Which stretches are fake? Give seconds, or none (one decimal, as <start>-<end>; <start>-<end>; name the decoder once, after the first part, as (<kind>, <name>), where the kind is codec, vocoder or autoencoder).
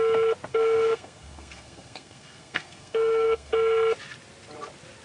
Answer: 0.5-3.5 (codec, SNAC)